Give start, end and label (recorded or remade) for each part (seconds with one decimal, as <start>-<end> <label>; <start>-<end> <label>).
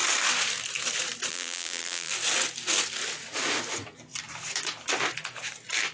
0.0-1.3 recorded; 1.3-2.1 remade; 2.1-5.9 recorded